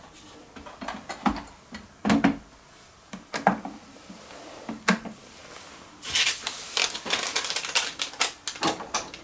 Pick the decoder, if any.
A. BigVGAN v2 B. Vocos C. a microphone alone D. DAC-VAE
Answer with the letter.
C